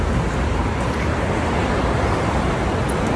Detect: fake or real real